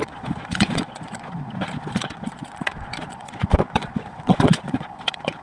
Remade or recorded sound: remade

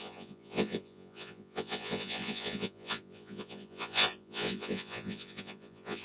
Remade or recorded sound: remade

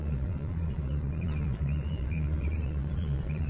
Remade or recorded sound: remade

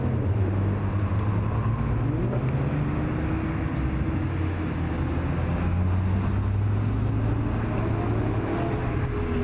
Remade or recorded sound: recorded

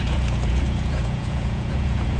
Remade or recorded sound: remade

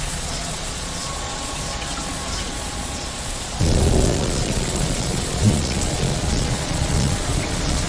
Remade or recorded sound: remade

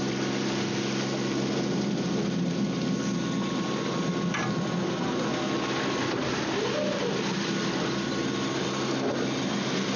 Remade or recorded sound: recorded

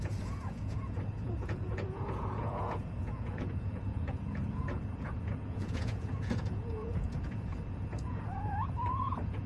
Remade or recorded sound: remade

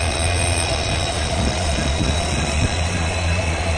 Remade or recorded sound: remade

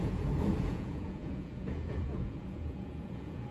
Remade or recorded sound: remade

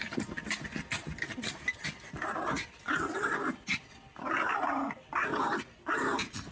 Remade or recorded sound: recorded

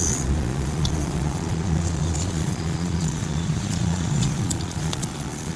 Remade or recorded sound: remade